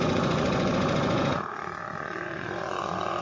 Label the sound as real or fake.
fake